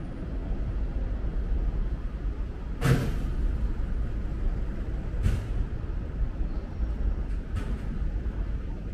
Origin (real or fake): real